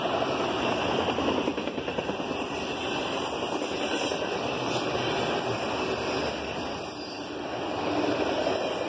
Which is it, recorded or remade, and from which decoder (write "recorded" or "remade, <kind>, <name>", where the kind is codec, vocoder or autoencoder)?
recorded